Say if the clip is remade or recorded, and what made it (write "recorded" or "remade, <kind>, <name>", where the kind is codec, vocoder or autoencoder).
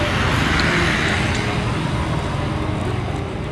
recorded